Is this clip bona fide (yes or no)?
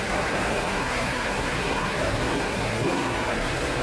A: no